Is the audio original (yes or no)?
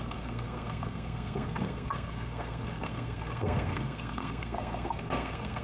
no